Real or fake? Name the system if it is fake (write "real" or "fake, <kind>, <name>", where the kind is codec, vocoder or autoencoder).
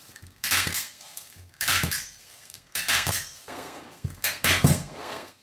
fake, codec, SNAC